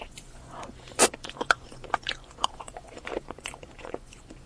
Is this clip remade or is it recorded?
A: remade